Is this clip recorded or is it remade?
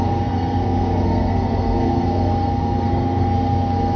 remade